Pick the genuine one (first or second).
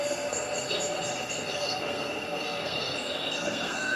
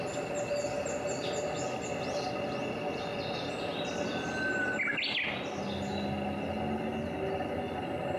second